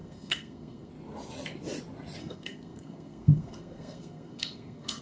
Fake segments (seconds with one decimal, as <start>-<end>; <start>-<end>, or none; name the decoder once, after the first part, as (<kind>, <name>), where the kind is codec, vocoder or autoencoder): 0.0-0.9 (codec, SNAC); 2.2-5.0